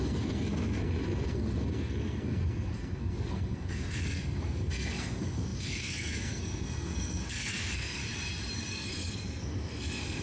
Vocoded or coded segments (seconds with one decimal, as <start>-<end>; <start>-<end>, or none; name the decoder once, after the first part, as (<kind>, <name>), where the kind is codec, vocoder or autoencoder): 0.0-8.0 (codec, SNAC); 8.7-10.2